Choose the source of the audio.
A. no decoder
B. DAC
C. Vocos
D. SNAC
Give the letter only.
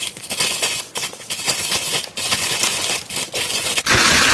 C